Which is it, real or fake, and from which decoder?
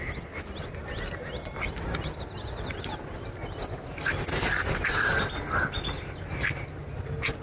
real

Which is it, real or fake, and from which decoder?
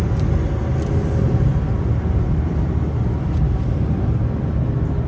real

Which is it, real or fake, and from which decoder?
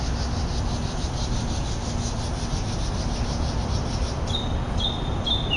real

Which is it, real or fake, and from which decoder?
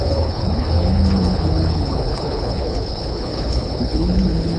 fake, codec, HILCodec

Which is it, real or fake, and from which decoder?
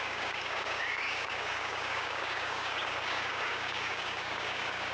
fake, codec, DAC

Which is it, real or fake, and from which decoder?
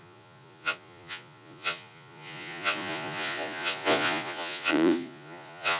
fake, vocoder, Vocos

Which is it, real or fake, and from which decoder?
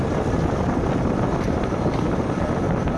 real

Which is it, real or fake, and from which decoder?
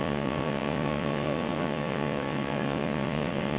fake, vocoder, WaveNeXt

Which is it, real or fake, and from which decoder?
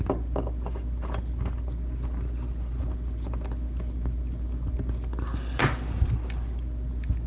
real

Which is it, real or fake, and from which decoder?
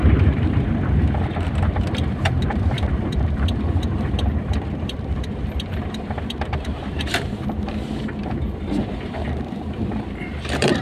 fake, vocoder, BigVGAN v2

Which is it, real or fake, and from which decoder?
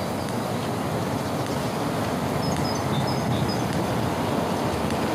real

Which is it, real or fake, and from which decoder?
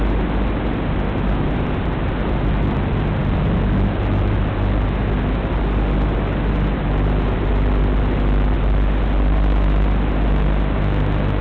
real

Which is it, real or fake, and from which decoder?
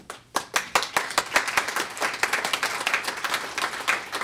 real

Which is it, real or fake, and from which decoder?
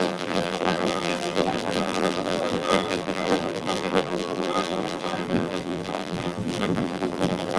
fake, vocoder, BigVGAN v2